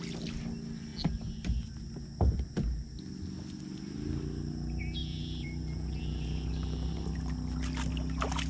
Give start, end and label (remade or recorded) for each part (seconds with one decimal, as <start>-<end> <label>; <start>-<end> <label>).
0.0-5.0 recorded; 5.0-6.0 remade; 6.0-8.5 recorded